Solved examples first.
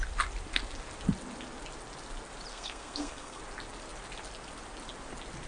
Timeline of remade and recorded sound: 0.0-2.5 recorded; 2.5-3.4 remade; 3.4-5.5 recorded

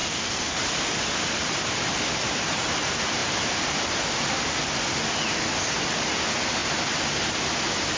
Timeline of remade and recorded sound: 0.0-0.6 remade; 0.6-8.0 recorded